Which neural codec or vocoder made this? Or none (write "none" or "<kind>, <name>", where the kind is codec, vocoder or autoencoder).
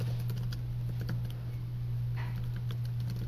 none